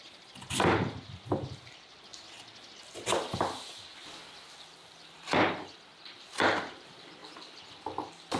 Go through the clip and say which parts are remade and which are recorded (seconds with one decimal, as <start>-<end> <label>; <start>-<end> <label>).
0.0-2.1 remade; 2.1-3.4 recorded; 3.4-7.2 remade; 7.2-8.4 recorded